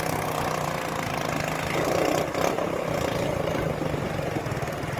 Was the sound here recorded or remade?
recorded